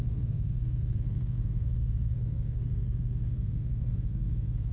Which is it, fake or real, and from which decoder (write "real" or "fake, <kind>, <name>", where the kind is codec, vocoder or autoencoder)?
fake, codec, SNAC